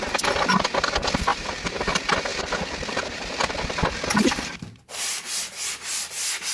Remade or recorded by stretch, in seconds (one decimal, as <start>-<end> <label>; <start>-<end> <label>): 0.0-1.3 recorded; 1.3-1.9 remade; 1.9-2.3 recorded; 2.3-5.7 remade; 5.7-6.5 recorded